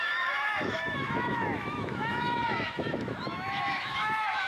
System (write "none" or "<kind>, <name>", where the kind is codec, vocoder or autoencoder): autoencoder, DAC-VAE